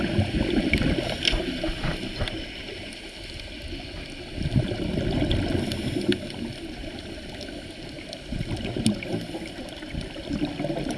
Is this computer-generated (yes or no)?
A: no